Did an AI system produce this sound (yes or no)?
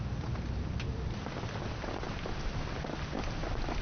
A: no